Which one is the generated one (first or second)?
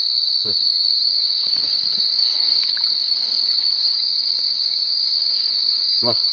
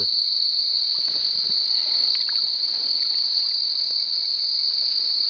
first